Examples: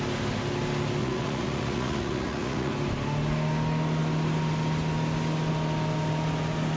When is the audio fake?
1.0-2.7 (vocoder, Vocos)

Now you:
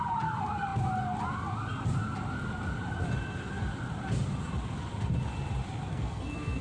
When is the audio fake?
5.9-6.6 (codec, SNAC)

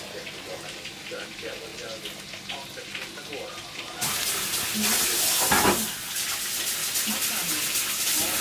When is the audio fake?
none

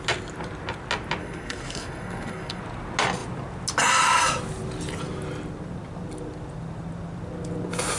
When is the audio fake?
1.2-2.6 (codec, SNAC)